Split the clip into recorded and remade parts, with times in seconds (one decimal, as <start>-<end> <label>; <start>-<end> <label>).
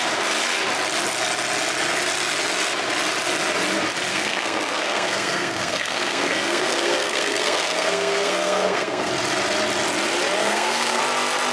0.0-4.1 recorded; 4.1-9.1 remade; 9.1-10.4 recorded; 10.4-11.0 remade; 11.0-11.5 recorded